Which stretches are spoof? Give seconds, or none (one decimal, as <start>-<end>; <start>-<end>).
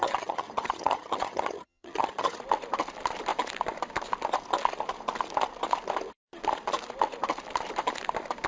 0.0-2.4